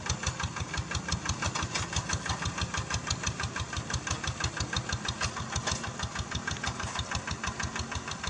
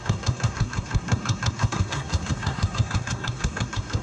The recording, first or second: first